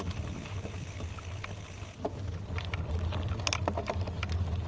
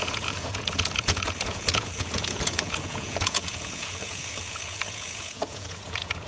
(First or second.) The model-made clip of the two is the second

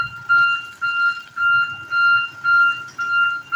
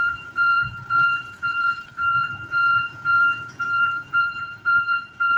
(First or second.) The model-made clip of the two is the second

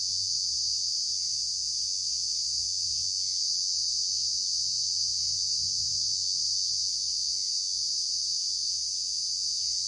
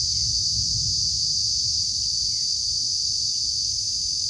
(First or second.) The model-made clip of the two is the first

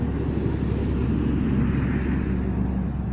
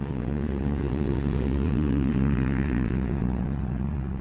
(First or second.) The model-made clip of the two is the second